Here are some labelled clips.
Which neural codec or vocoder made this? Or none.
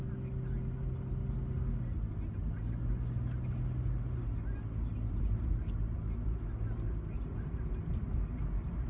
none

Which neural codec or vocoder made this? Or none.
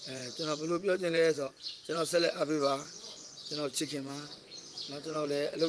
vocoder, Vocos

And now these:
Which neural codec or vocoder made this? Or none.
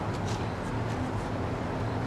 none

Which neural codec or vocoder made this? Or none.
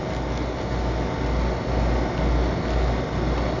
none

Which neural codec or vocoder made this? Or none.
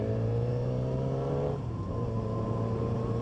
vocoder, BigVGAN v2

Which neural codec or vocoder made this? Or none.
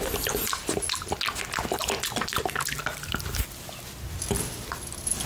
none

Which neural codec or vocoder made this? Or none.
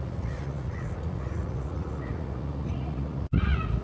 vocoder, Vocos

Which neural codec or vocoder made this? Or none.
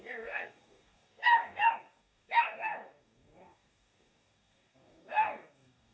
codec, DAC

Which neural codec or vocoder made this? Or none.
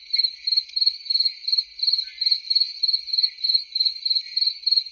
none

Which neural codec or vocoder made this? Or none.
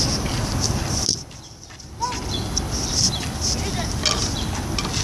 none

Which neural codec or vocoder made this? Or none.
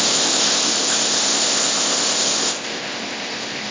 codec, ZipCodec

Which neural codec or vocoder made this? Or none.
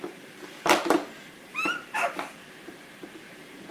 vocoder, BigVGAN v2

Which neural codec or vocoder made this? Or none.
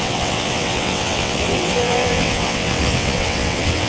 vocoder, WaveNeXt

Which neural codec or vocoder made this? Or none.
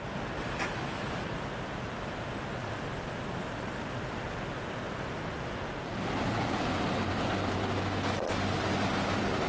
none